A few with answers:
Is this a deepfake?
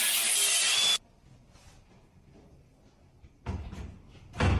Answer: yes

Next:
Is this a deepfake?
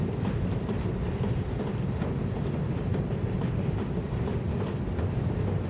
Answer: no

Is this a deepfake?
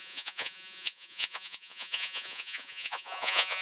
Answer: yes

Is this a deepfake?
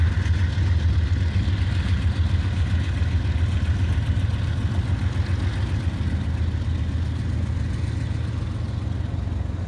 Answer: no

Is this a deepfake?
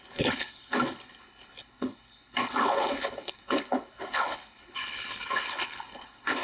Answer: yes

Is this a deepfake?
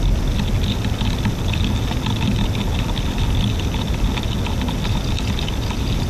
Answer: no